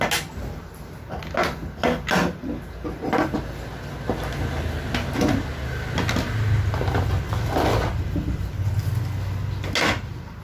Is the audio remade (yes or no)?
no